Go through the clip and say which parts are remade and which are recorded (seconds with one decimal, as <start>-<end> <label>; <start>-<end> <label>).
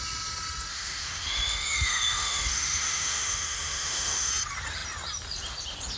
0.0-0.7 recorded; 0.7-4.3 remade; 4.3-6.0 recorded